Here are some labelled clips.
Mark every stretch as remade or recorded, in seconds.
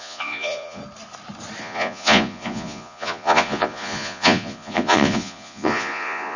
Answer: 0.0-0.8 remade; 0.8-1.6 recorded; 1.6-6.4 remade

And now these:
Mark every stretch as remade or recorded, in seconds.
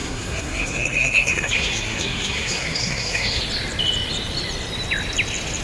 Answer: 0.0-3.4 remade; 3.4-5.6 recorded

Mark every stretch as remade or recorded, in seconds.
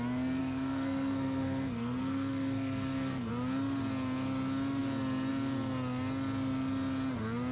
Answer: 0.0-0.4 recorded; 0.4-3.3 remade; 3.3-7.5 recorded